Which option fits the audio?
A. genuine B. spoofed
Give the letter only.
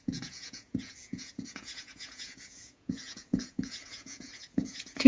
B